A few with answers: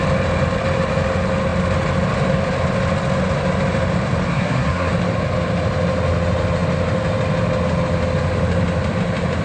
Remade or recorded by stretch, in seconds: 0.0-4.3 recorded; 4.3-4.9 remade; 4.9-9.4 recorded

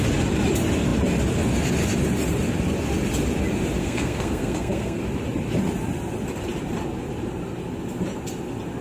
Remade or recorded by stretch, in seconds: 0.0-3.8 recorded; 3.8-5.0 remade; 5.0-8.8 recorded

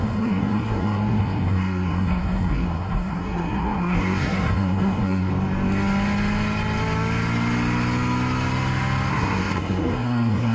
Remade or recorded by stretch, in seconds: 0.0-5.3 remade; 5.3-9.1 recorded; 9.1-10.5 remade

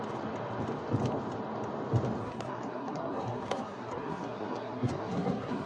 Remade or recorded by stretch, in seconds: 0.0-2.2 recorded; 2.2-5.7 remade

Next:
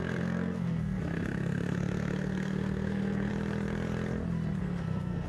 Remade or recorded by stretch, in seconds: 0.0-3.3 remade; 3.3-4.6 recorded; 4.6-5.3 remade

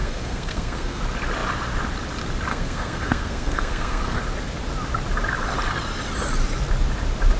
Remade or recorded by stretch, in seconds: 0.0-1.0 remade; 1.0-2.5 recorded; 2.5-4.2 remade; 4.2-7.4 recorded